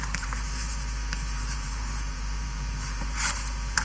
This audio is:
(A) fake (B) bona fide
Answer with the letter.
A